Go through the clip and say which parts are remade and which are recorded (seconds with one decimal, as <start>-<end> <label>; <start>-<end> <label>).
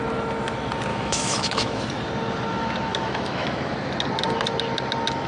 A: 0.0-0.9 recorded; 0.9-1.8 remade; 1.8-2.9 recorded; 2.9-3.7 remade; 3.7-5.3 recorded